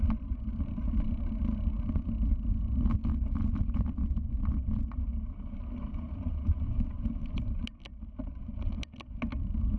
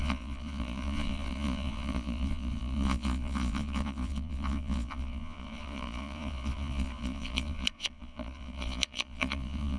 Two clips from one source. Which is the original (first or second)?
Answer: first